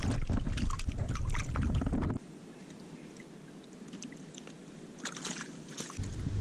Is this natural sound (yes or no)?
yes